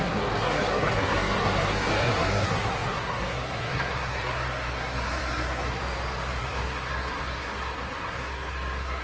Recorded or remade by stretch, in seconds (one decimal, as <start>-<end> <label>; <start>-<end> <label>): 0.0-5.8 remade; 5.8-6.4 recorded; 6.4-9.0 remade